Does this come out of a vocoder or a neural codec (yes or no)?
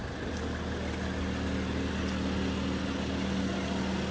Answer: no